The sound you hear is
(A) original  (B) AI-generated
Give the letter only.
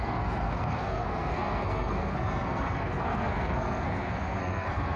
B